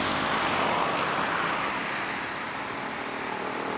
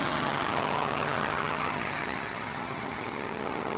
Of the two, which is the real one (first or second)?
first